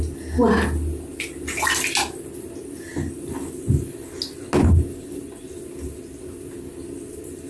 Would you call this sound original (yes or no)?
yes